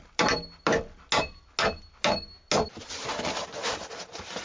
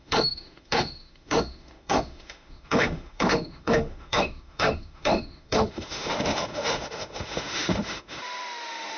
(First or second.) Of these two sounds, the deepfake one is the second